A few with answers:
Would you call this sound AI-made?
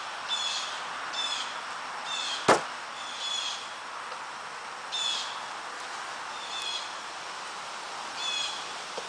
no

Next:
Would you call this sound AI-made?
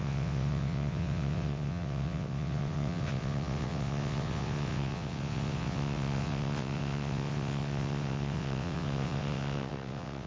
yes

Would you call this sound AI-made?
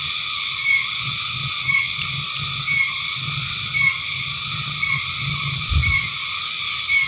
no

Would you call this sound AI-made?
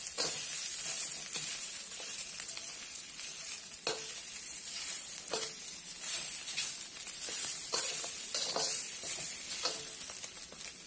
no